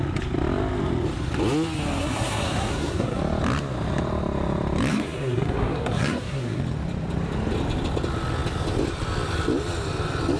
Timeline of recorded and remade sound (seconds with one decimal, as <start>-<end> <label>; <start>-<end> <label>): 0.0-2.0 recorded; 2.0-3.2 remade; 3.2-4.9 recorded; 4.9-6.6 remade; 6.6-10.4 recorded